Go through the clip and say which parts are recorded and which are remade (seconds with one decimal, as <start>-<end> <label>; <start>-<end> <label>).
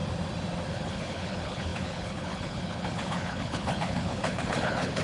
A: 0.0-0.7 recorded; 0.7-5.0 remade